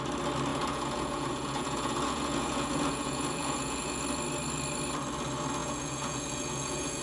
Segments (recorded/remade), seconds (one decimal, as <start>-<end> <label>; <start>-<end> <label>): 0.0-0.5 recorded; 0.5-4.0 remade; 4.0-5.6 recorded; 5.6-7.0 remade